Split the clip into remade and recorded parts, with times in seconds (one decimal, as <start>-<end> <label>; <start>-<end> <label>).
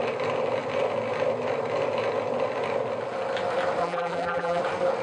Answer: 0.0-3.8 recorded; 3.8-4.6 remade; 4.6-5.0 recorded